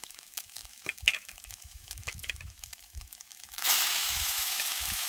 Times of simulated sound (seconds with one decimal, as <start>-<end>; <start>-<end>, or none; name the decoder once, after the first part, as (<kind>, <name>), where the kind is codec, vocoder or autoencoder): 0.0-5.1 (autoencoder, DAC-VAE)